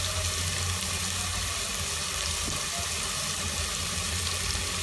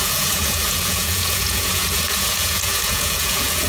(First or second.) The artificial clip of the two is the second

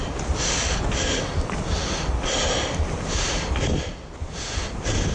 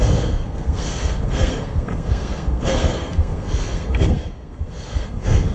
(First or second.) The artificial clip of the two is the second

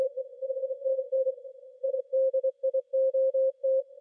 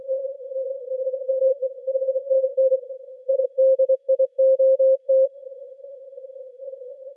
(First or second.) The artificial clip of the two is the second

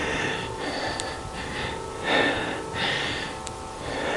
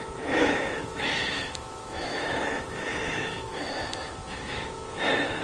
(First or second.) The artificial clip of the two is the second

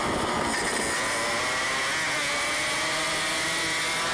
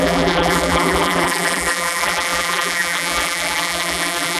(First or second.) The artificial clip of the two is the second